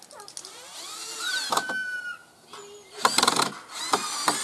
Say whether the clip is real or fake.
real